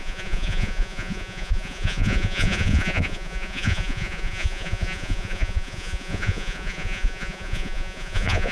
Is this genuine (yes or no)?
no